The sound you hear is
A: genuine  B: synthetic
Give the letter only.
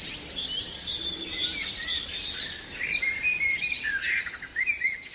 A